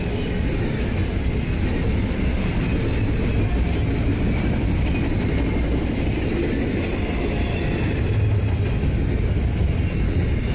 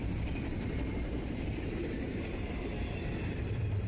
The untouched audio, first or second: first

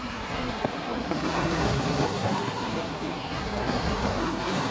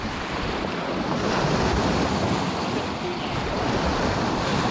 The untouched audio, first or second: second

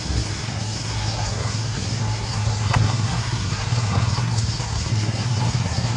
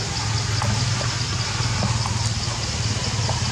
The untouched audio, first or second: second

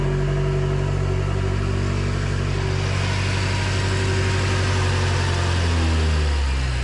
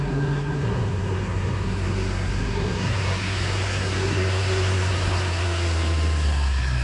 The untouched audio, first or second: first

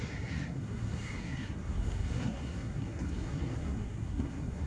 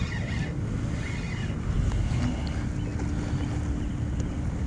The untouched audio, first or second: second